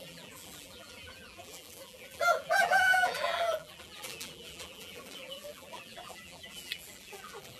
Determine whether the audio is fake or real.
fake